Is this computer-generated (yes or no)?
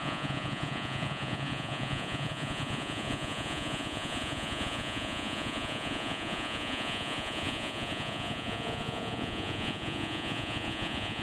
yes